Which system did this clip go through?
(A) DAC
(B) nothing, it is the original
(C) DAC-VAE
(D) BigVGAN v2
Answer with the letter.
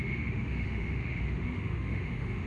C